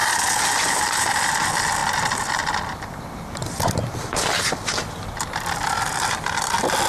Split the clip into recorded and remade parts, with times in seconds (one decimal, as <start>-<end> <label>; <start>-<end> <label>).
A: 0.0-1.1 recorded; 1.1-6.9 remade